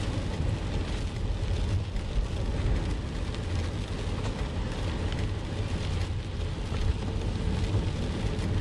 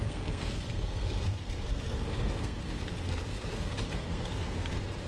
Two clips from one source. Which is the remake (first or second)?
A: second